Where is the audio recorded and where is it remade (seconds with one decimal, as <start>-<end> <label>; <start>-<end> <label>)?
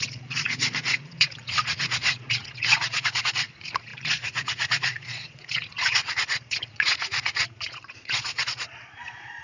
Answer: 0.0-9.4 remade